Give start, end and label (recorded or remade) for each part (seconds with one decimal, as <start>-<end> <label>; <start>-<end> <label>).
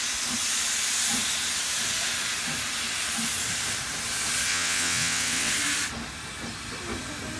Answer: 0.0-4.5 recorded; 4.5-5.5 remade; 5.5-7.4 recorded